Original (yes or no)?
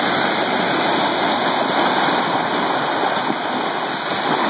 yes